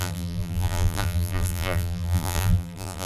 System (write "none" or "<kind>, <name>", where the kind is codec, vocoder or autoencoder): vocoder, BigVGAN v2